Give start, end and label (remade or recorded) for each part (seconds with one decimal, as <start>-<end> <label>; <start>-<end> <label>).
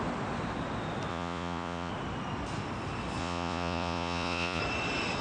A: 0.0-1.1 recorded; 1.1-1.9 remade; 1.9-3.2 recorded; 3.2-4.6 remade; 4.6-5.2 recorded